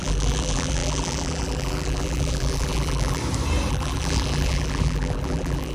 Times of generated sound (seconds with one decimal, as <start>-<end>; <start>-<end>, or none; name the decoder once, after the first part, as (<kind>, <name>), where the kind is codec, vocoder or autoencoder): 0.0-3.2 (vocoder, BigVGAN v2); 3.7-5.7